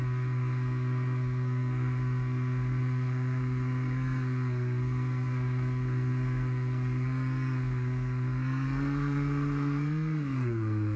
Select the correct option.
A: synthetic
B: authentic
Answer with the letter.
A